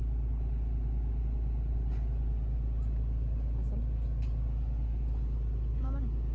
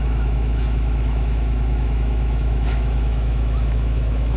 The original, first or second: first